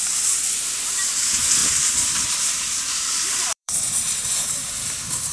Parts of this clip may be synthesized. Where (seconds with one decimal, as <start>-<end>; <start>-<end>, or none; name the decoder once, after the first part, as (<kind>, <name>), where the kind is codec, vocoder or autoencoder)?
1.6-3.8 (vocoder, BigVGAN v2)